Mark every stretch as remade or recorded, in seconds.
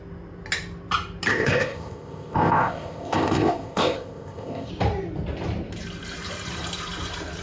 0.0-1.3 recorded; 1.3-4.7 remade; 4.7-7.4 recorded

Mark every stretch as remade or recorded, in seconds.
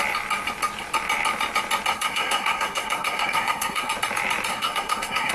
0.0-1.9 recorded; 1.9-3.9 remade; 3.9-4.5 recorded; 4.5-5.3 remade